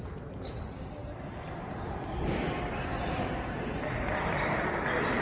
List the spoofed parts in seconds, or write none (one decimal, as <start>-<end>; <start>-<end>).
none